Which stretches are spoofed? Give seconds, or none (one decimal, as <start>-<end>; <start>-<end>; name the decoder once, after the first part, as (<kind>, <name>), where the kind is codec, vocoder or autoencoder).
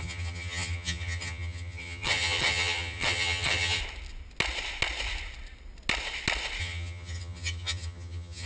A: 0.0-3.8 (vocoder, HiFi-GAN); 6.6-8.5